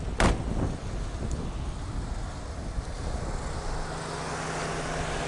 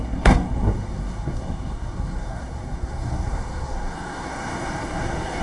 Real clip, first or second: first